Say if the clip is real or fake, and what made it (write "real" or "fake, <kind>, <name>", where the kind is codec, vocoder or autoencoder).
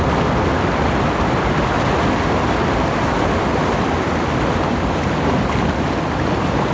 real